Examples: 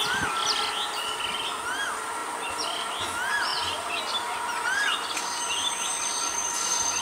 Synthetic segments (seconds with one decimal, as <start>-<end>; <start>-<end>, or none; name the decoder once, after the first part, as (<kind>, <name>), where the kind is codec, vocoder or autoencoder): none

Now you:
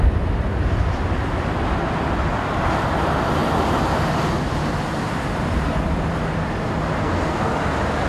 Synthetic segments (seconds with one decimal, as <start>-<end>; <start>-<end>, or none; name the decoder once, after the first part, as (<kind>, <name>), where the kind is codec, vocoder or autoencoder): 7.0-7.5 (codec, SNAC)

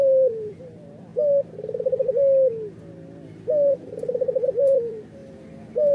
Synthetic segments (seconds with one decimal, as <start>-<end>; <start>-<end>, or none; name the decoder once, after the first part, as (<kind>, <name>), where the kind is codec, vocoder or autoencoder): 0.0-1.1 (vocoder, BigVGAN v2); 2.9-5.2

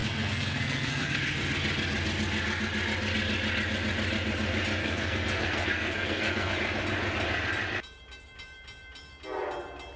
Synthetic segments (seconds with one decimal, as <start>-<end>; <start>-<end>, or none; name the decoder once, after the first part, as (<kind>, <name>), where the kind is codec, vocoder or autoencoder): 0.0-1.2 (codec, SNAC); 4.8-6.5

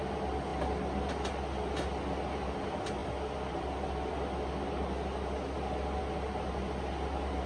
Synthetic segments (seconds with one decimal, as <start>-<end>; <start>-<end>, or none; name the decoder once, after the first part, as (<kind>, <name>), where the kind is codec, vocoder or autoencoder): none

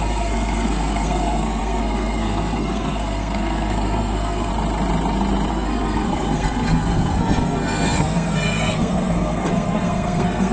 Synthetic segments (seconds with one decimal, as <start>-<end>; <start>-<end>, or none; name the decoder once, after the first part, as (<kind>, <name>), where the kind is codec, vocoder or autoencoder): 0.0-4.5 (codec, SNAC); 5.5-10.5

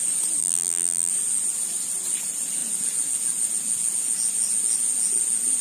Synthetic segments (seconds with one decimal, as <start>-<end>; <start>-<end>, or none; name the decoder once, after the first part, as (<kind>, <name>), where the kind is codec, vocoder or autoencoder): 0.4-1.1 (vocoder, BigVGAN v2)

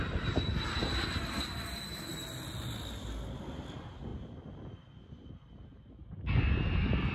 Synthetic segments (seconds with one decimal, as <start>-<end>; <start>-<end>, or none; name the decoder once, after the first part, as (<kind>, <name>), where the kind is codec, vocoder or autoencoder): 6.0-6.5 (codec, DAC)